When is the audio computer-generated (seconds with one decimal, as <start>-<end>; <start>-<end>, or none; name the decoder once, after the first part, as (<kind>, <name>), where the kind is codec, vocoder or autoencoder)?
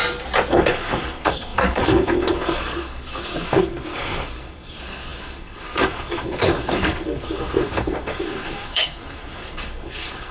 0.5-10.3 (codec, SNAC)